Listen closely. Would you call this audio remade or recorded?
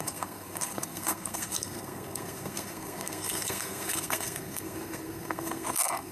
remade